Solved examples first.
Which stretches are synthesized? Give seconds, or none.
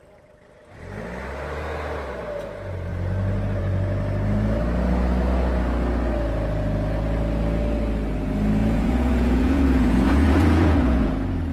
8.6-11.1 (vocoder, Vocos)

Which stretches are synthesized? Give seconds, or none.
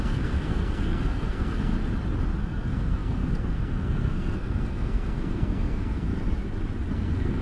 0.0-1.7 (codec, SNAC); 2.4-6.1; 6.9-7.4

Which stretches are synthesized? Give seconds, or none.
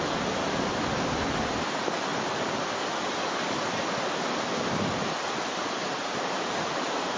none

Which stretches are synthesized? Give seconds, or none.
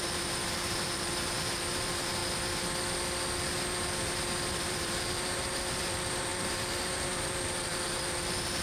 0.0-2.2 (vocoder, BigVGAN v2); 4.5-8.6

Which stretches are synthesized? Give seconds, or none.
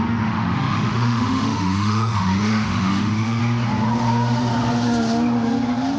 0.0-3.4 (autoencoder, DAC-VAE)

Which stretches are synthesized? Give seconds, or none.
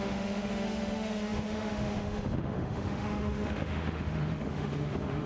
0.0-5.3 (autoencoder, DAC-VAE)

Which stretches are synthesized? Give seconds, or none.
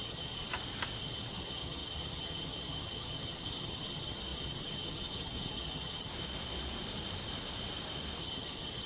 0.0-0.5 (vocoder, HiFi-GAN); 1.0-6.1; 8.2-8.9